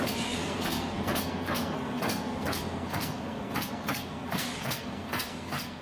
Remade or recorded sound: remade